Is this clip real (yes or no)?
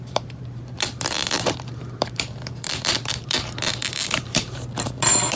no